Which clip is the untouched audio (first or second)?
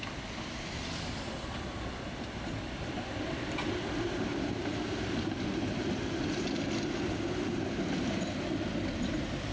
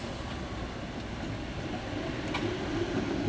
second